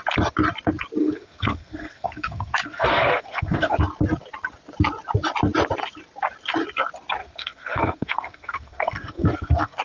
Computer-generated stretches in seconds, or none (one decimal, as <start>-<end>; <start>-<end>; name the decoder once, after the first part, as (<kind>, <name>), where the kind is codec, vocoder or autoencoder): 1.0-3.8 (codec, SNAC); 7.2-9.8